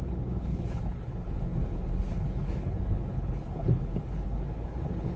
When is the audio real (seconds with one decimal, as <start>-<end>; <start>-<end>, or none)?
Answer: none

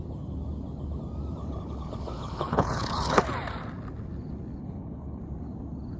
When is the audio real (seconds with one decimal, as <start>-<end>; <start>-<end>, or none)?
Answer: 0.0-1.4; 3.2-4.6; 5.2-6.0